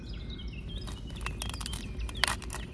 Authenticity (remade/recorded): recorded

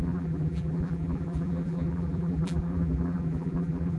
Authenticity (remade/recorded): remade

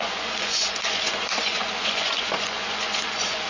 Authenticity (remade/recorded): remade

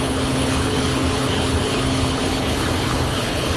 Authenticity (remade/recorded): remade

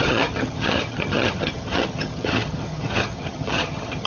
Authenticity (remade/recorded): remade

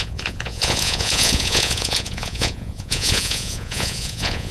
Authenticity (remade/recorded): remade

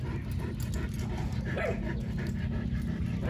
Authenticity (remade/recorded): recorded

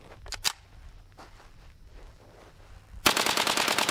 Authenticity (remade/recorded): recorded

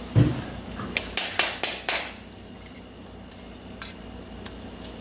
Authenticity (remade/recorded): recorded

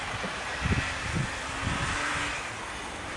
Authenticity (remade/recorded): recorded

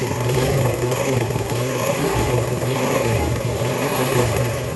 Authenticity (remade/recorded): remade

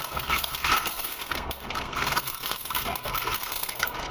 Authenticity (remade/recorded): remade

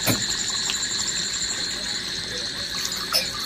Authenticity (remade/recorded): remade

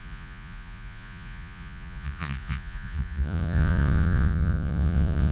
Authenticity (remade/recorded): remade